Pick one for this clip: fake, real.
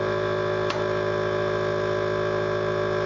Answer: real